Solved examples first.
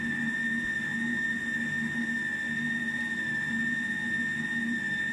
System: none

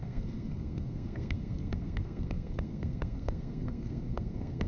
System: codec, SNAC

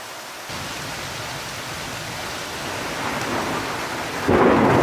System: none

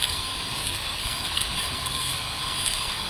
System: codec, SNAC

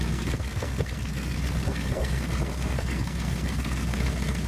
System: codec, SNAC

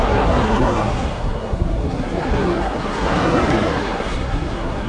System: codec, SNAC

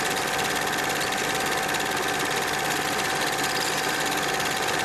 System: none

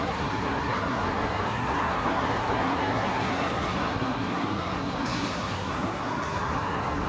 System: codec, SNAC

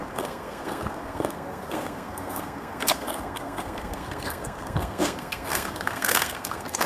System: codec, SNAC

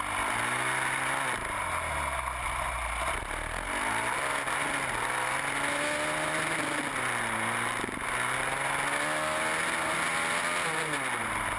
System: none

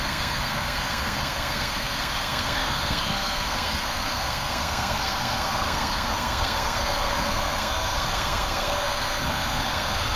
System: codec, SNAC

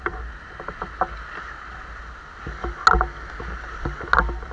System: none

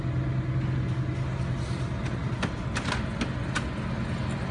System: none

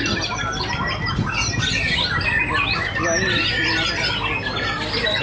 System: none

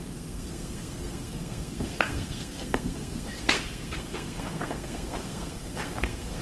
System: codec, SNAC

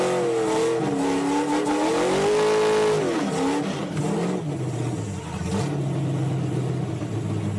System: none